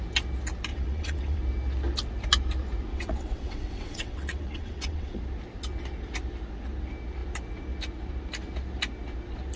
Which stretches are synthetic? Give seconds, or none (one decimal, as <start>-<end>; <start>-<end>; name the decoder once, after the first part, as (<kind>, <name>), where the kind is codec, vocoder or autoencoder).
0.7-1.4 (vocoder, WaveNeXt); 2.9-5.2